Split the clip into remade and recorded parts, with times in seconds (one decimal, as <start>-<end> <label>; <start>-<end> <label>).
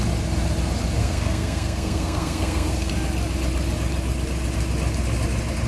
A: 0.0-1.0 recorded; 1.0-2.9 remade; 2.9-5.7 recorded